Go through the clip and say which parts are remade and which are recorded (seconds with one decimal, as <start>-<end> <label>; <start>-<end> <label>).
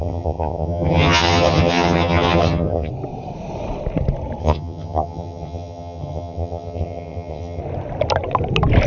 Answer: 0.0-2.9 remade; 2.9-4.4 recorded; 4.4-7.6 remade; 7.6-8.9 recorded